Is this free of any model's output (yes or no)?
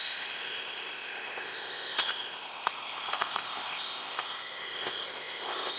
no